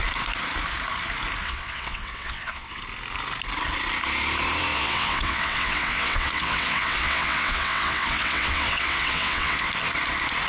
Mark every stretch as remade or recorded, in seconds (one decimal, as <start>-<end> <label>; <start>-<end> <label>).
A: 0.0-1.4 recorded; 1.4-2.8 remade; 2.8-4.7 recorded; 4.7-9.7 remade; 9.7-10.5 recorded